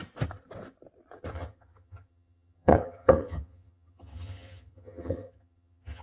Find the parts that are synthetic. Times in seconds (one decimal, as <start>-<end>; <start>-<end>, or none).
1.3-6.0